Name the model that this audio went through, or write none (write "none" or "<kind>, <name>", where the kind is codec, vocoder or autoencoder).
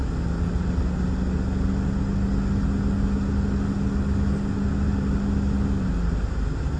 none